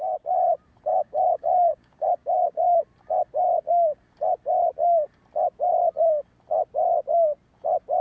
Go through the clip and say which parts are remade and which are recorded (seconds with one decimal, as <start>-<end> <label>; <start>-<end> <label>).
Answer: 0.0-0.9 recorded; 0.9-2.8 remade; 2.8-8.0 recorded